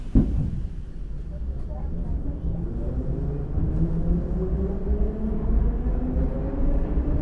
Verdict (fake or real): real